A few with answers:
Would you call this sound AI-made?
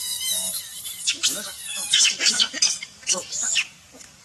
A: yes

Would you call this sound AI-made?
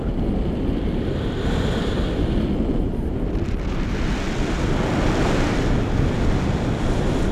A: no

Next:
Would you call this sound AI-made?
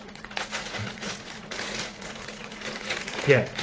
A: yes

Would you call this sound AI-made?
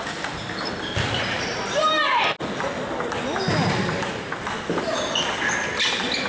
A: no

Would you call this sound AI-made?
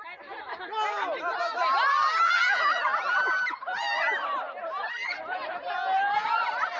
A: no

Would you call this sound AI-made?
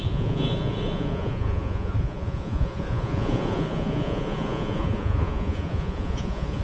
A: yes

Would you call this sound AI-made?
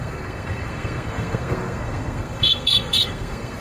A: yes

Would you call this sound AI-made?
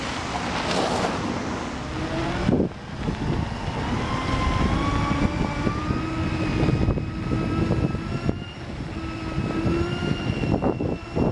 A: no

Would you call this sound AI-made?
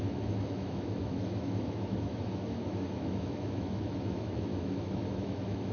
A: yes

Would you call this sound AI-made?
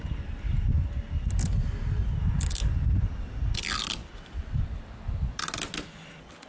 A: no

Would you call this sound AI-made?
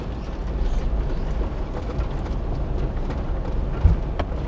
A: no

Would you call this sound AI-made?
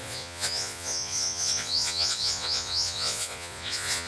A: yes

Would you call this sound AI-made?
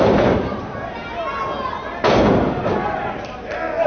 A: no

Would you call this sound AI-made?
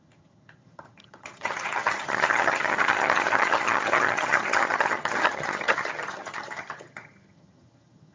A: yes